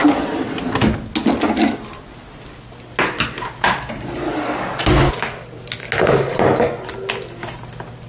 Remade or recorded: recorded